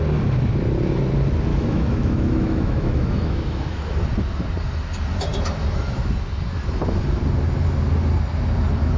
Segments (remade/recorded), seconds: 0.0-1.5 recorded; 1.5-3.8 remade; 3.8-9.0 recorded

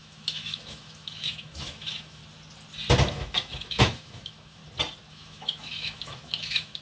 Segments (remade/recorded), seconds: 0.0-2.2 remade; 2.2-3.1 recorded; 3.1-4.6 remade; 4.6-5.1 recorded; 5.1-6.8 remade

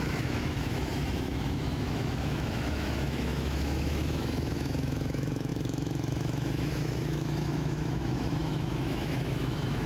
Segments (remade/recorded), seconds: 0.0-9.9 remade

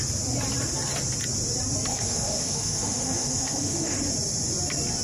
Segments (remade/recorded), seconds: 0.0-1.9 recorded; 1.9-4.0 remade; 4.0-5.0 recorded

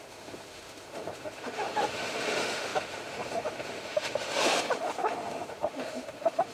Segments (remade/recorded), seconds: 0.0-6.5 remade

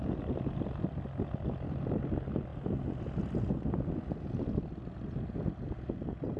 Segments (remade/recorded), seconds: 0.0-6.4 recorded

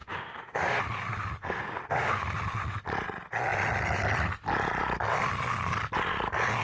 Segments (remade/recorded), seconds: 0.0-0.8 remade; 0.8-1.4 recorded; 1.4-2.2 remade; 2.2-6.6 recorded

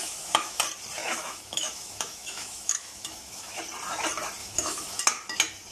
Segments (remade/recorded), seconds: 0.0-0.6 remade; 0.6-1.0 recorded; 1.0-3.6 remade; 3.6-4.4 recorded; 4.4-5.0 remade; 5.0-5.7 recorded